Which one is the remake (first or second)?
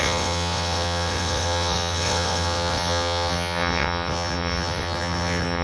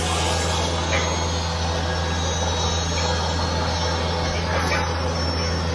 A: first